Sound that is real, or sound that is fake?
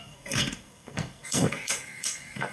fake